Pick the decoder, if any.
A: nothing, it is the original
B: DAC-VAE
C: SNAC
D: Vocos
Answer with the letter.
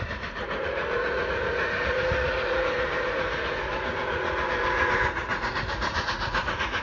D